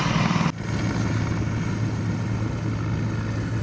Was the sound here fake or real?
real